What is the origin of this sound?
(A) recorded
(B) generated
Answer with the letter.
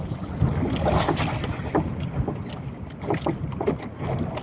A